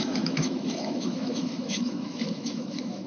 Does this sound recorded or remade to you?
remade